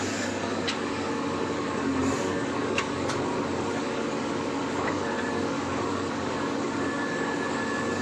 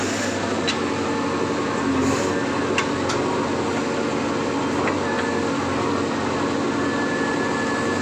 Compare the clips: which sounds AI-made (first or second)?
first